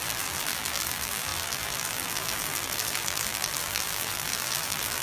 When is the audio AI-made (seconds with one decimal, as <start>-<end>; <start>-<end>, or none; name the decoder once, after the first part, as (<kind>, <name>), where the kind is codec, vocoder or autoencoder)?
0.0-5.0 (vocoder, BigVGAN v2)